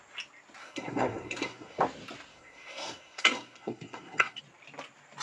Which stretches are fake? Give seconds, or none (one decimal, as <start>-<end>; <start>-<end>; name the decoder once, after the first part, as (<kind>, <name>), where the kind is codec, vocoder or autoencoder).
0.6-1.8 (codec, SNAC); 2.3-4.4